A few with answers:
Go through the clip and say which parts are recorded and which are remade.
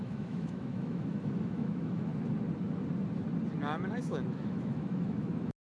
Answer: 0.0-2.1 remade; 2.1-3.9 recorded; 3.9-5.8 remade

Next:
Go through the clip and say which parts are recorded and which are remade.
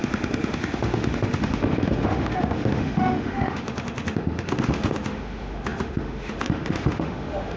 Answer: 0.0-7.6 remade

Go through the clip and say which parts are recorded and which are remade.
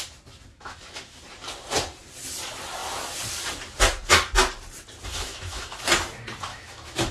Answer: 0.0-0.5 recorded; 0.5-1.2 remade; 1.2-5.1 recorded; 5.1-5.8 remade; 5.8-6.5 recorded; 6.5-7.1 remade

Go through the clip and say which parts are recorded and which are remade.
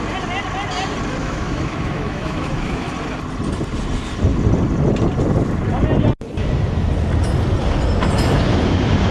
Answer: 0.0-1.2 recorded; 1.2-2.9 remade; 2.9-9.1 recorded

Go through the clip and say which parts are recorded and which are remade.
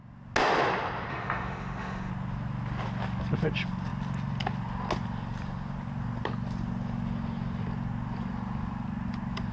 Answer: 0.0-1.1 recorded; 1.1-2.1 remade; 2.1-9.5 recorded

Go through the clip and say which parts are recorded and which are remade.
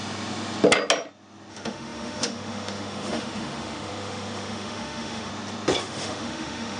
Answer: 0.0-1.5 recorded; 1.5-5.3 remade; 5.3-5.8 recorded; 5.8-6.8 remade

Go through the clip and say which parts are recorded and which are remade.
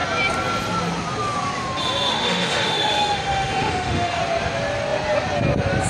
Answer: 0.0-2.1 recorded; 2.1-4.2 remade; 4.2-5.9 recorded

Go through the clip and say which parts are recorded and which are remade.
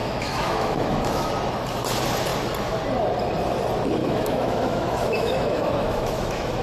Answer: 0.0-1.3 remade; 1.3-4.0 recorded; 4.0-6.6 remade